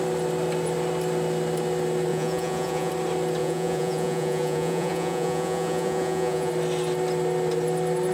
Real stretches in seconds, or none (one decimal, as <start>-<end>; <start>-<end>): 0.0-2.1; 2.9-3.4; 6.5-8.1